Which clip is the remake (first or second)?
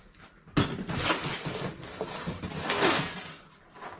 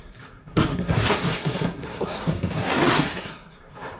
second